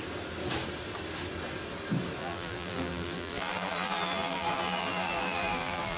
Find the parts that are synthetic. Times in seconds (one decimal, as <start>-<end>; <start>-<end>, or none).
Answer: 2.2-6.0